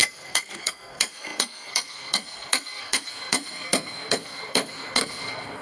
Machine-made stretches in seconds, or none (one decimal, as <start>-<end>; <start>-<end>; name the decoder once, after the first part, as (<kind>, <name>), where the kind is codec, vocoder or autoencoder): 0.0-5.6 (codec, SNAC)